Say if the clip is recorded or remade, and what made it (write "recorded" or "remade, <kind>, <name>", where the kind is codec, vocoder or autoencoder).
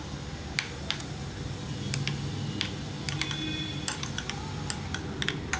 recorded